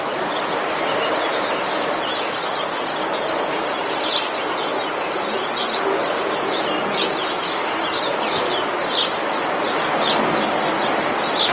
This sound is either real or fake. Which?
real